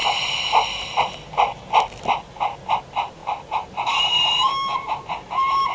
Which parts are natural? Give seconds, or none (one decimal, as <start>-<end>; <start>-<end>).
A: 0.0-2.8